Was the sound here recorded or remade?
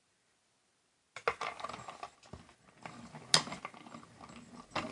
recorded